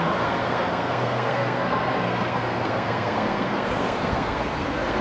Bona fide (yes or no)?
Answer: no